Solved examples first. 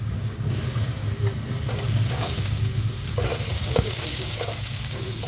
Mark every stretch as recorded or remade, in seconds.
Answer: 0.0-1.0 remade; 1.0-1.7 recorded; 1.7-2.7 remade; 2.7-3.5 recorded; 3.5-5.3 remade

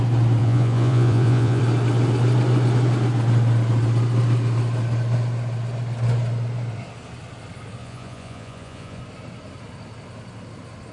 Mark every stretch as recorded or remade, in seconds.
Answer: 0.0-0.4 recorded; 0.4-1.6 remade; 1.6-7.8 recorded; 7.8-9.0 remade; 9.0-10.9 recorded